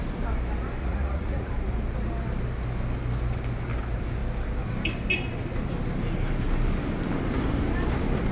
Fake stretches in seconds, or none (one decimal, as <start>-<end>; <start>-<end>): 0.8-1.5